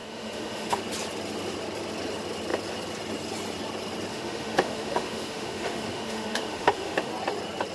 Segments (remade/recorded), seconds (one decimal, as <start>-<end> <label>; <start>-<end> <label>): 0.0-0.8 remade; 0.8-4.1 recorded; 4.1-7.1 remade; 7.1-7.7 recorded

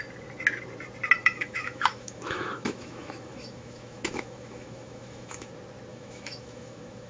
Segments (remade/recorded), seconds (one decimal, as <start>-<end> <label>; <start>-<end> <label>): 0.0-1.2 recorded; 1.2-5.5 remade; 5.5-5.9 recorded; 5.9-7.1 remade

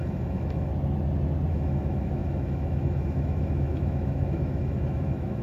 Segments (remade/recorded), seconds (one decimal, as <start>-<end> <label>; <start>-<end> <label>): 0.0-0.7 remade; 0.7-1.5 recorded; 1.5-5.4 remade